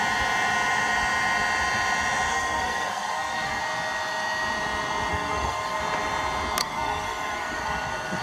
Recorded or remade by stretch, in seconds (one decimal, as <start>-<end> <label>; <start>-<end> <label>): 0.0-2.3 recorded; 2.3-3.6 remade; 3.6-5.1 recorded; 5.1-5.8 remade; 5.8-6.6 recorded; 6.6-8.2 remade